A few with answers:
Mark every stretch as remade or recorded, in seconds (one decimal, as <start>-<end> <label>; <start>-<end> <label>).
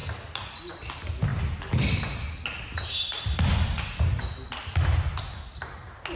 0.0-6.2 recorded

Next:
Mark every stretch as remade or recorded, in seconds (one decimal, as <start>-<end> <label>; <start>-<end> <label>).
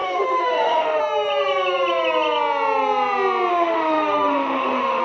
0.0-1.0 remade; 1.0-3.5 recorded; 3.5-5.0 remade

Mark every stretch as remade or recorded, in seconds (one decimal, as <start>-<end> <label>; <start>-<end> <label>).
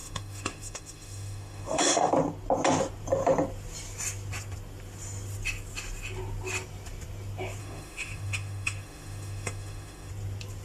0.0-2.1 remade; 2.1-7.6 recorded; 7.6-10.1 remade; 10.1-10.6 recorded